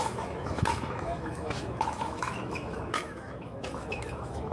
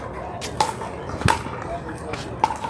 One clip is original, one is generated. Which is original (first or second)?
second